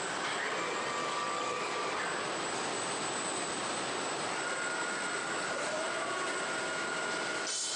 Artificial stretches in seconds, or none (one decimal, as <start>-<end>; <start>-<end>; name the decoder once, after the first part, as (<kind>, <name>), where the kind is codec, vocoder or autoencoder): 1.0-2.0 (codec, DAC); 5.2-5.8